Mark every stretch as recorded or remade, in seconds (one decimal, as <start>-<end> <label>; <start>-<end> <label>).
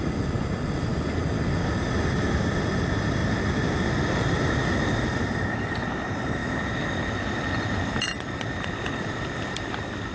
0.0-0.9 remade; 0.9-1.6 recorded; 1.6-3.2 remade; 3.2-4.3 recorded; 4.3-6.4 remade; 6.4-8.2 recorded; 8.2-10.1 remade